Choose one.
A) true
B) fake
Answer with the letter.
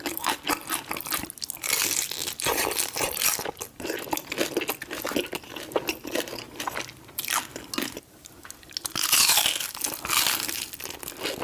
A